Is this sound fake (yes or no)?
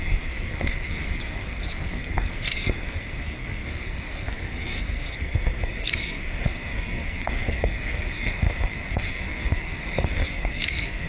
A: yes